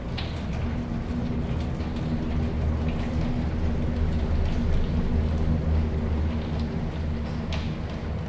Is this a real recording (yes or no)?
yes